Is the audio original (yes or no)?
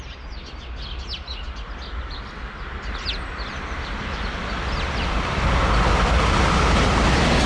yes